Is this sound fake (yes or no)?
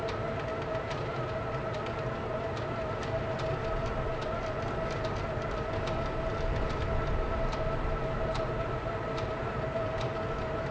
no